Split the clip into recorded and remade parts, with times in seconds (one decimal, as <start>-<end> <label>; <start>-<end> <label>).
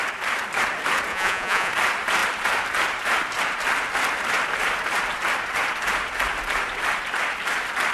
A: 0.0-1.1 recorded; 1.1-1.7 remade; 1.7-7.9 recorded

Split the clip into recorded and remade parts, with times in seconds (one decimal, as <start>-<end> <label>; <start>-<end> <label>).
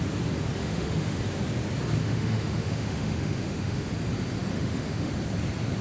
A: 0.0-0.6 recorded; 0.6-1.2 remade; 1.2-2.0 recorded; 2.0-3.9 remade; 3.9-4.5 recorded; 4.5-5.1 remade; 5.1-5.8 recorded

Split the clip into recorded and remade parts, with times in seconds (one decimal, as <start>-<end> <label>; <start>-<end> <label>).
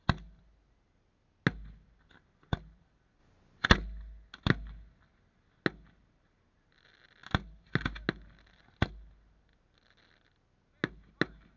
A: 0.0-11.6 recorded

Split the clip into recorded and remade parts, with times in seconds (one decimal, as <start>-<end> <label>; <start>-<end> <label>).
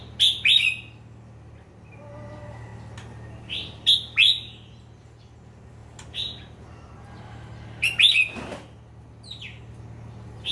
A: 0.0-10.5 recorded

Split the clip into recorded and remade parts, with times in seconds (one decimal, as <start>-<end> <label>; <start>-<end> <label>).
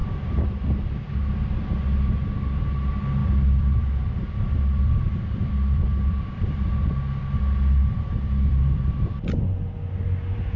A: 0.0-0.6 remade; 0.6-3.2 recorded; 3.2-6.7 remade; 6.7-7.2 recorded; 7.2-9.1 remade; 9.1-10.6 recorded